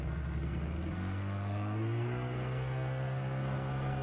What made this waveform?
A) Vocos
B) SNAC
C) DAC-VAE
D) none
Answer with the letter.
B